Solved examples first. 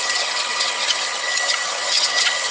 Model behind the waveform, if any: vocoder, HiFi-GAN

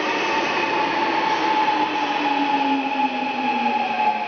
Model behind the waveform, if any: none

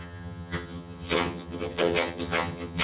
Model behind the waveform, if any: vocoder, HiFi-GAN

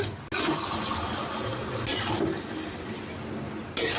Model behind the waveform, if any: none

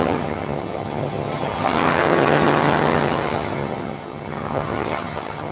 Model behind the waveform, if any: vocoder, HiFi-GAN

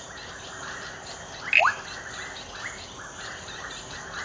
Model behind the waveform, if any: none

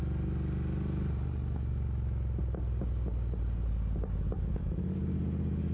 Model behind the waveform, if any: none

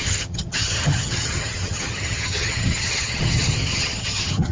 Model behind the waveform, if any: vocoder, HiFi-GAN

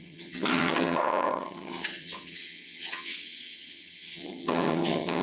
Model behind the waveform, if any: vocoder, HiFi-GAN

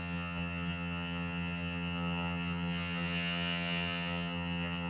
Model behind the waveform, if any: vocoder, HiFi-GAN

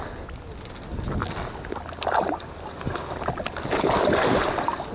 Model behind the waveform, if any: none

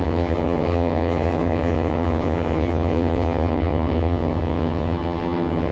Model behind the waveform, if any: vocoder, HiFi-GAN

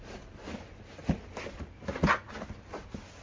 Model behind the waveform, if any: none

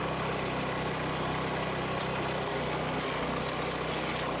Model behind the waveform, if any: none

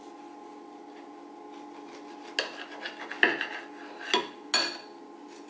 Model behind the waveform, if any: none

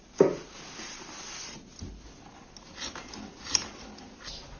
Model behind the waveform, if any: none